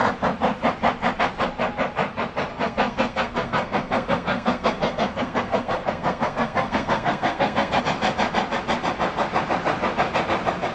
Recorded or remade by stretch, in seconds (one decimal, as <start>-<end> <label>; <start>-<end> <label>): 0.0-2.5 recorded; 2.5-7.8 remade; 7.8-10.7 recorded